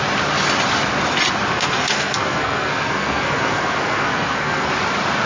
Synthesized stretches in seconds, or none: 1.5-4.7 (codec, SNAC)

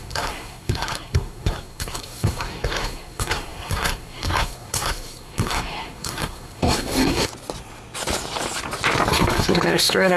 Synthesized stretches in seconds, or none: 0.0-7.3 (codec, SNAC); 9.1-10.2

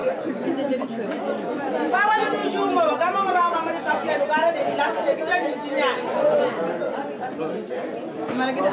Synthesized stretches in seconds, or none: none